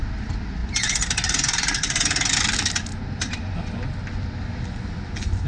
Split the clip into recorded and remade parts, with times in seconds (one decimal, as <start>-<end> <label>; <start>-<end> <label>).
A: 0.0-5.5 recorded